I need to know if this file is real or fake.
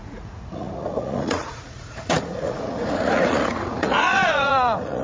fake